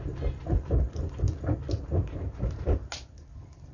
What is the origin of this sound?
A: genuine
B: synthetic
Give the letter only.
A